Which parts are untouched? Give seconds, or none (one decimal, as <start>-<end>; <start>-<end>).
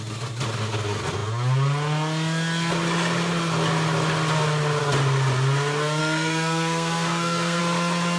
0.0-6.0; 7.6-8.2